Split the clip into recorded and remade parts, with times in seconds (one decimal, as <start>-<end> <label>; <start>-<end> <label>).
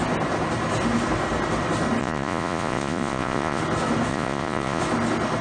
0.0-2.0 recorded; 2.0-3.6 remade; 3.6-4.1 recorded; 4.1-4.8 remade; 4.8-5.4 recorded